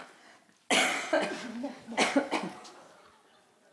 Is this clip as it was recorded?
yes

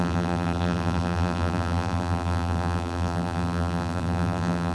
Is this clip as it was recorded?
no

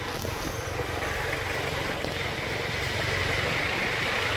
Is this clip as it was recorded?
yes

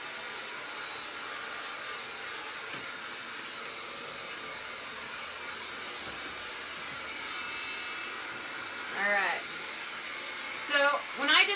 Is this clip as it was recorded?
yes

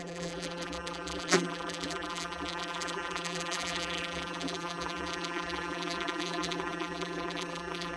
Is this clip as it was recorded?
no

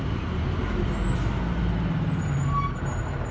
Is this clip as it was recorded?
no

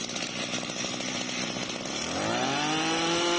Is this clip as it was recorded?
yes